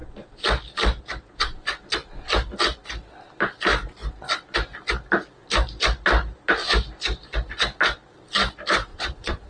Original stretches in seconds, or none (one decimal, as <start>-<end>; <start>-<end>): 0.0-8.9

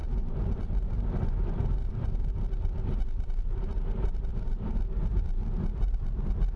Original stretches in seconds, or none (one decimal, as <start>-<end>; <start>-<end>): none

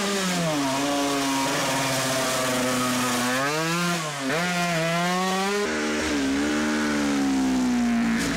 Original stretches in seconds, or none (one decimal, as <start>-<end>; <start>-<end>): 0.0-8.4

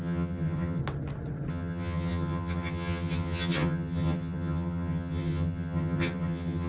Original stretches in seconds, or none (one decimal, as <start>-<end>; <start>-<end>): 0.8-1.5

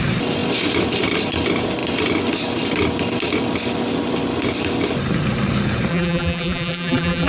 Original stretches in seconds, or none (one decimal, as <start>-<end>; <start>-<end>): 0.0-5.9